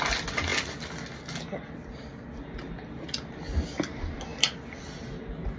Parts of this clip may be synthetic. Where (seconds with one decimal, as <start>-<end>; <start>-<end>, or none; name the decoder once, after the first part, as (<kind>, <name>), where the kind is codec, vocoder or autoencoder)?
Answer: none